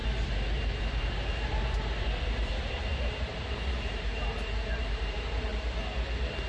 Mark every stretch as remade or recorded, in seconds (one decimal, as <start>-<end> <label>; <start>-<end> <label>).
0.0-5.5 remade; 5.5-6.5 recorded